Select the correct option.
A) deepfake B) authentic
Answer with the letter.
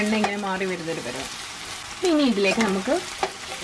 B